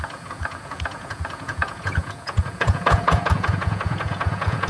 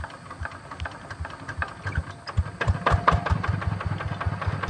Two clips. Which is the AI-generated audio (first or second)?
first